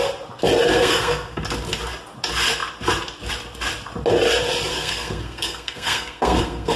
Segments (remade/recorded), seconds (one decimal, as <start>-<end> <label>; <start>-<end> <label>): 0.0-0.7 recorded; 0.7-1.4 remade; 1.4-4.7 recorded; 4.7-6.8 remade